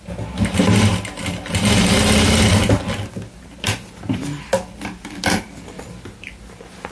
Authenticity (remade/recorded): recorded